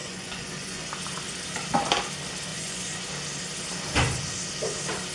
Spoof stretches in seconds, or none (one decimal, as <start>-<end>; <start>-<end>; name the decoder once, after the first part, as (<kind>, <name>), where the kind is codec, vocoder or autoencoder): 0.0-0.9 (vocoder, Vocos); 2.5-3.1